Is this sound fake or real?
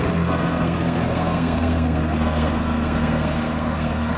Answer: fake